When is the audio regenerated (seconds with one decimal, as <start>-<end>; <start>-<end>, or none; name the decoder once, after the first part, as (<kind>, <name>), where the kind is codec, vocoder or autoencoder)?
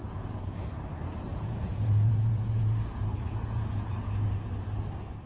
0.0-0.6 (vocoder, Vocos); 1.3-4.5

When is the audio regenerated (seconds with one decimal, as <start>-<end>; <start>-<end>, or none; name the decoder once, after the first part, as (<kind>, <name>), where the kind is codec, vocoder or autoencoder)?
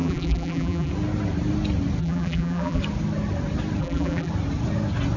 0.0-0.9 (vocoder, BigVGAN v2); 2.0-2.8; 3.8-4.3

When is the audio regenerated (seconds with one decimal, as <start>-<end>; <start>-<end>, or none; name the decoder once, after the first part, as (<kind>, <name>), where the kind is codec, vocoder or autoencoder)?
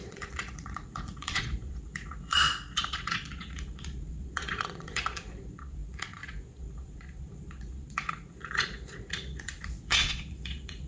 0.0-10.9 (vocoder, Vocos)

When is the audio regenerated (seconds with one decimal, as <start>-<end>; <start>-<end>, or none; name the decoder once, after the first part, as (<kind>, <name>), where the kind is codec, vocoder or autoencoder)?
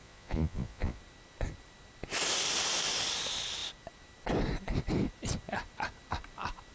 0.0-1.0 (vocoder, Vocos)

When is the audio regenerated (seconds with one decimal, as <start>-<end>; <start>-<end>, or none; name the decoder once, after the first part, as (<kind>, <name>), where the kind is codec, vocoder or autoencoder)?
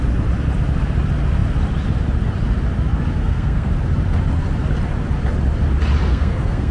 3.2-3.7 (codec, SNAC); 6.1-6.7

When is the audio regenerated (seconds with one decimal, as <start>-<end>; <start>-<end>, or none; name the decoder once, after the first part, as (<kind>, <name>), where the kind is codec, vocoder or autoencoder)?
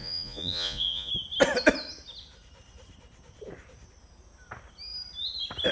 0.0-1.1 (vocoder, Vocos)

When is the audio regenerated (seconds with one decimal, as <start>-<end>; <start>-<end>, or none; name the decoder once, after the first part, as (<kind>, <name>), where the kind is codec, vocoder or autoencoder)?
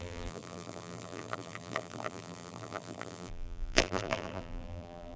0.0-5.2 (vocoder, BigVGAN v2)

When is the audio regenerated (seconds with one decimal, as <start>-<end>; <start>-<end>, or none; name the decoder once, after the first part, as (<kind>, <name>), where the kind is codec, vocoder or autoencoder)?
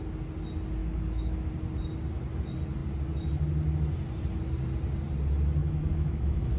0.8-1.5 (autoencoder, DAC-VAE); 5.6-6.6